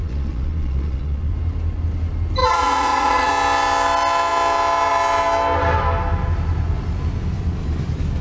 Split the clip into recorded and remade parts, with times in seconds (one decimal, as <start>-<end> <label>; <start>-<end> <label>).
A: 0.0-1.3 remade; 1.3-2.4 recorded; 2.4-3.3 remade; 3.3-8.2 recorded